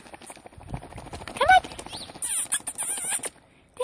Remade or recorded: recorded